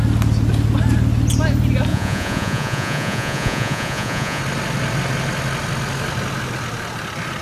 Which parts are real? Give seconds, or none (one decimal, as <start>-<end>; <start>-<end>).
0.0-1.9; 4.4-7.4